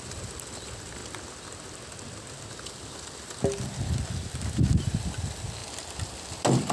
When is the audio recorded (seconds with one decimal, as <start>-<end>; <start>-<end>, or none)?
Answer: 1.0-4.8; 5.6-6.7